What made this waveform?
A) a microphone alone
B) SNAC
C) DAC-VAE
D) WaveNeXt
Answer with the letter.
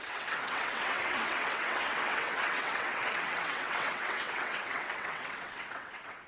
D